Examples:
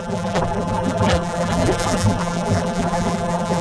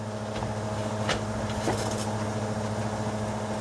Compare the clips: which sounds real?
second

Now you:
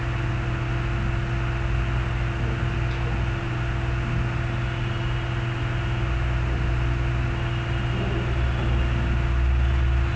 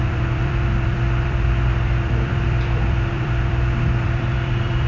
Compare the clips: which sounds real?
first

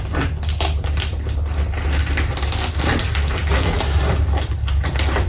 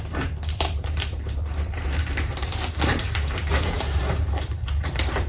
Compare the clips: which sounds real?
first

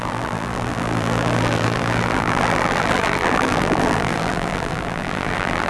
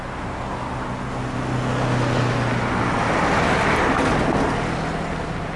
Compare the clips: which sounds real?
second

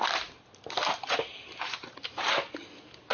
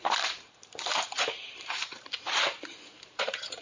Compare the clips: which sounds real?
first